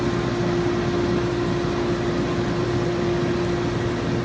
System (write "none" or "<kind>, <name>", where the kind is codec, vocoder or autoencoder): none